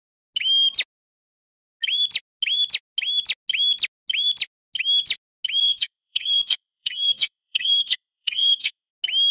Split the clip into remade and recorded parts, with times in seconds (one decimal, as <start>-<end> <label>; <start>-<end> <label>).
0.0-5.6 recorded; 5.6-8.9 remade; 8.9-9.3 recorded